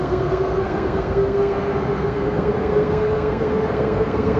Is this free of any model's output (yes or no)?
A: no